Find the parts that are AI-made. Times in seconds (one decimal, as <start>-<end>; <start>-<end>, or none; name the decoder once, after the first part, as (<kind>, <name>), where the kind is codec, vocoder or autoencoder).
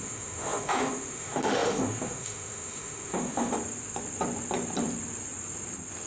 0.0-3.5 (autoencoder, DAC-VAE)